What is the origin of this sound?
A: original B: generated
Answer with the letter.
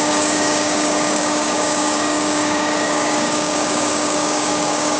B